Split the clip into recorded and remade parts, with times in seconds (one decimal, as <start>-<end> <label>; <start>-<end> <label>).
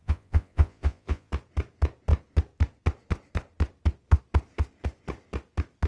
0.0-1.3 remade; 1.3-5.9 recorded